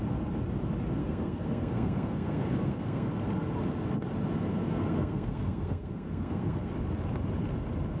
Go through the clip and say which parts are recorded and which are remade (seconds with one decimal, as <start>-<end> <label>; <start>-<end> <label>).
0.0-1.0 recorded; 1.0-3.1 remade; 3.1-4.5 recorded; 4.5-6.7 remade; 6.7-8.0 recorded